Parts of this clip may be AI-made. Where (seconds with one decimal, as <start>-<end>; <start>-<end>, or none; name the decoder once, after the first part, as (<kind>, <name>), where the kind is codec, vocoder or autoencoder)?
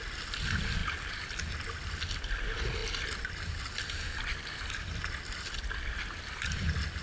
none